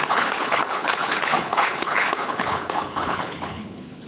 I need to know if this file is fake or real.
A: fake